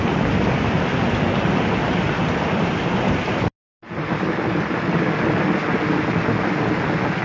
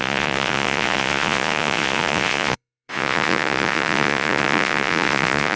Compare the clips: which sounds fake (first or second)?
second